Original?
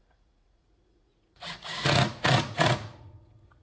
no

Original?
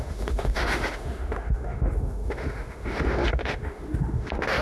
no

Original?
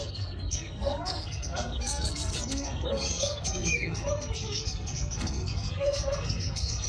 no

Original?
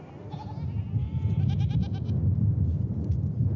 yes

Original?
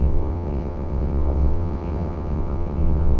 no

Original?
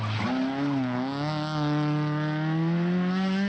yes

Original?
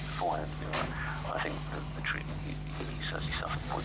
yes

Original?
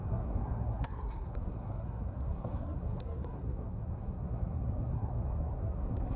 no